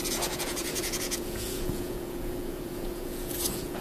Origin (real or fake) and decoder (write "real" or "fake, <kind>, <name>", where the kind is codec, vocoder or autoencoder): fake, vocoder, Vocos